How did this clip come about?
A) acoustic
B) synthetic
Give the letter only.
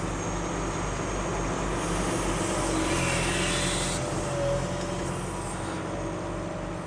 A